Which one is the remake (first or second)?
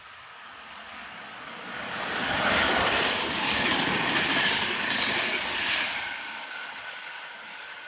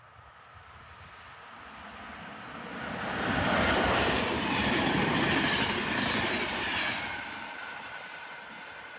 first